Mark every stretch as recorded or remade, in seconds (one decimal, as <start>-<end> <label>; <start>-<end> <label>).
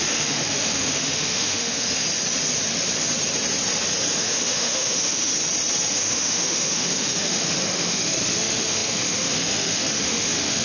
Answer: 0.0-2.0 remade; 2.0-4.2 recorded; 4.2-5.3 remade; 5.3-5.9 recorded; 5.9-10.6 remade